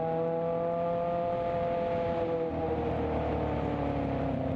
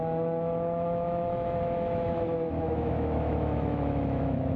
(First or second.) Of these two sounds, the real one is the first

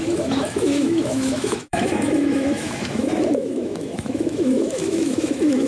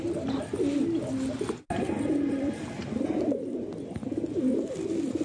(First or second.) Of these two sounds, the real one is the second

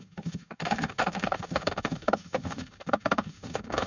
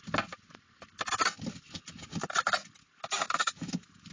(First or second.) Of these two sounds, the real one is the second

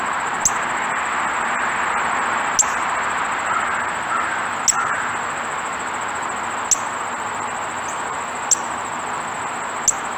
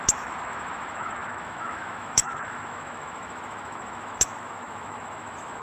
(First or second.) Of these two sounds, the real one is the first